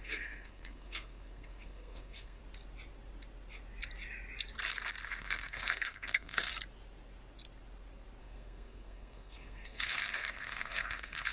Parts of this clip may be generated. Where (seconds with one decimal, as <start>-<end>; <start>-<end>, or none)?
0.0-2.4; 5.1-6.5; 8.2-11.3

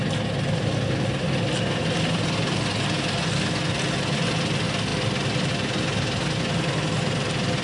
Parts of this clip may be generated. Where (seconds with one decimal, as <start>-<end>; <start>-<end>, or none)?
none

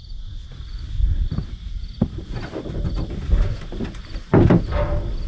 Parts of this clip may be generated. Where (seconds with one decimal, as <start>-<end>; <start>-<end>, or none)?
none

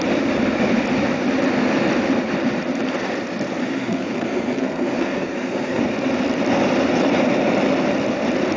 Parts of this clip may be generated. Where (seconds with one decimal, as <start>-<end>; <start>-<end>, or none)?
3.6-5.8

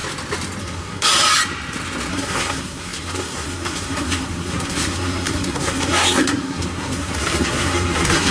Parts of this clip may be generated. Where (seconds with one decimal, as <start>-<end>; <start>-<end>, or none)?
0.6-1.1; 2.1-8.3

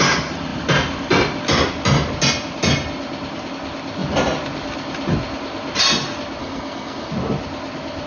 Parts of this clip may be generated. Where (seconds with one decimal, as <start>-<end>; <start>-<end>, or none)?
6.4-7.1

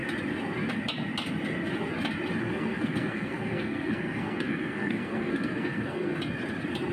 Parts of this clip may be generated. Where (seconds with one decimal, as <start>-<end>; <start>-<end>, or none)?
2.4-6.2